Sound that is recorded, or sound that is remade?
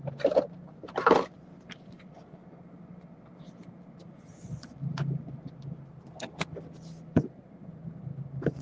recorded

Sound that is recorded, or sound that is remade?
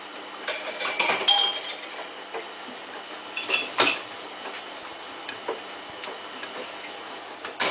remade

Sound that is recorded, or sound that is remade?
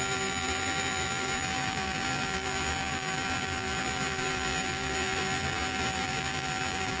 remade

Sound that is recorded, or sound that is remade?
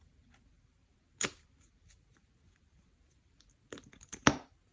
recorded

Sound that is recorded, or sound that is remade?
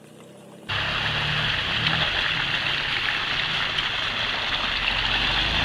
recorded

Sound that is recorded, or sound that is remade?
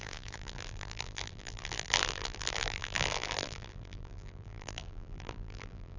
remade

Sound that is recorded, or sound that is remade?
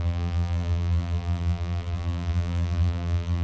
remade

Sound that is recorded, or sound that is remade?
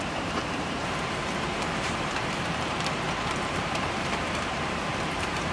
remade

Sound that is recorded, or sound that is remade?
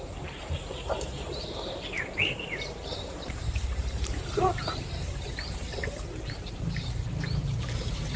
remade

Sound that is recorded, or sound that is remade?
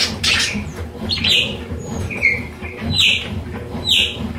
remade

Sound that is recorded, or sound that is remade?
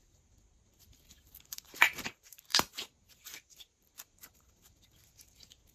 remade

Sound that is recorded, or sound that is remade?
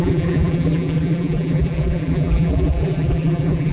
remade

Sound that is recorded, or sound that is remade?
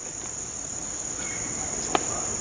recorded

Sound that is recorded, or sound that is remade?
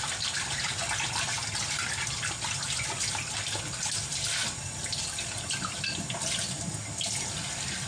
recorded